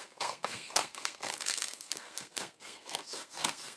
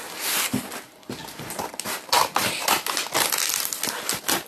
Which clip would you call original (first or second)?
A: second